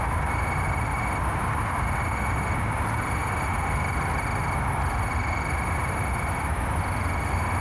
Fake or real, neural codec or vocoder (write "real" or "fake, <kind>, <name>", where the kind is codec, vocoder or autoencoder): real